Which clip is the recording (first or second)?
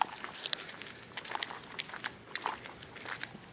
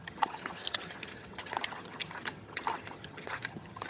first